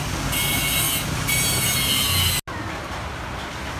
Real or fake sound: real